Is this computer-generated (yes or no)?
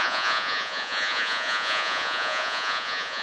yes